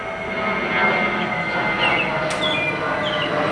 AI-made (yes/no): no